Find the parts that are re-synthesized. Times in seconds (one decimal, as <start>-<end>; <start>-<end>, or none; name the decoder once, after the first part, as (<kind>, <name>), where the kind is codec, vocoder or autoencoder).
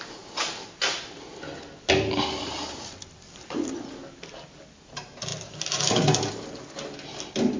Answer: 5.3-6.3 (vocoder, BigVGAN v2)